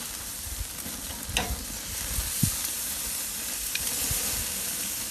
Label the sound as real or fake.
real